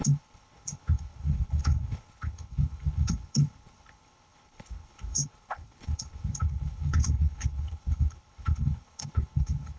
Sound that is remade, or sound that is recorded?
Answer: remade